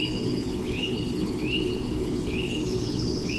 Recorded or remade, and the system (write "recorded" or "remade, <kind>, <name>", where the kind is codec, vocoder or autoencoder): remade, codec, HILCodec